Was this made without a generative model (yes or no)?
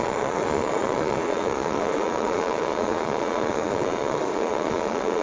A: no